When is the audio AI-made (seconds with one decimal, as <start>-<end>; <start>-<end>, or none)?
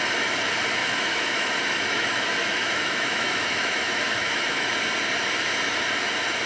0.8-4.7